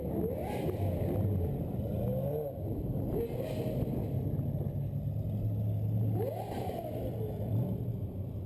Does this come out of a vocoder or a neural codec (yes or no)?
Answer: no